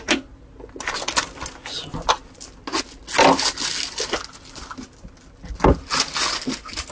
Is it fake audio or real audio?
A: real